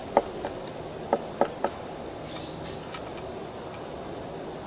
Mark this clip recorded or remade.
recorded